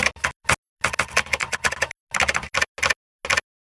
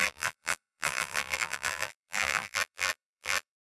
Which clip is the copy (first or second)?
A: second